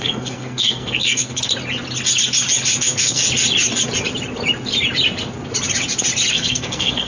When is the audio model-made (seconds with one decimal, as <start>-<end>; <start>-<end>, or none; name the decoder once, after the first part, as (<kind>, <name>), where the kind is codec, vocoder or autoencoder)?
0.0-1.5 (codec, SNAC); 2.8-3.2; 6.3-7.1